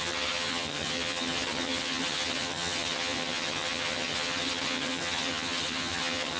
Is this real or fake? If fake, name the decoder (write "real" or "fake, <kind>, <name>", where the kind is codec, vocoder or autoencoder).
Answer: fake, vocoder, HiFi-GAN